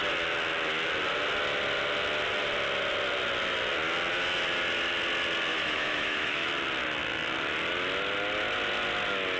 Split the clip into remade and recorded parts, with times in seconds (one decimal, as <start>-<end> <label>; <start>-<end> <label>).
0.0-5.5 recorded; 5.5-6.5 remade; 6.5-9.4 recorded